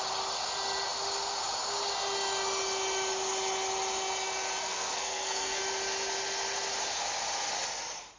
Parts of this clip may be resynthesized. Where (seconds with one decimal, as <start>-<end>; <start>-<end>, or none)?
4.6-5.6